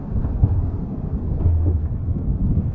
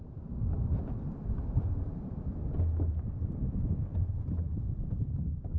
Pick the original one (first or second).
second